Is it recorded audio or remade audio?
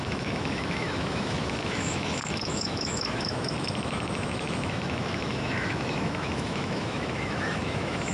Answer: remade